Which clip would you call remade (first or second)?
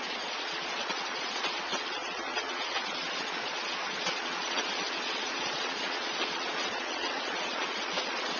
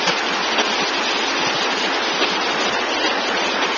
first